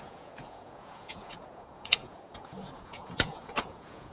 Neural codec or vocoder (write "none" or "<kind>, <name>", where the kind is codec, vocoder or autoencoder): vocoder, Vocos